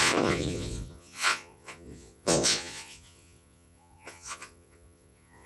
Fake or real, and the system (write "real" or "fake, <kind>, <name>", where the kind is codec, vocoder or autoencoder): fake, vocoder, Vocos